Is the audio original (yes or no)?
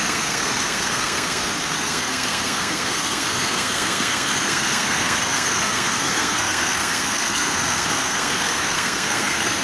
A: no